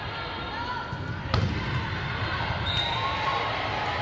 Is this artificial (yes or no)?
no